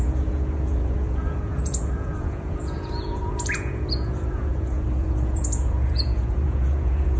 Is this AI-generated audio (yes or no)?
yes